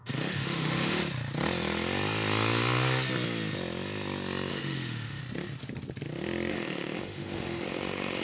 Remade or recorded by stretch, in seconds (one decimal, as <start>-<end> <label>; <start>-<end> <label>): 0.0-1.0 remade; 1.0-4.5 recorded; 4.5-5.2 remade; 5.2-6.5 recorded; 6.5-8.2 remade